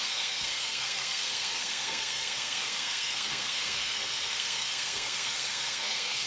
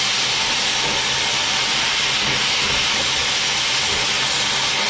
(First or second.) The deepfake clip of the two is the first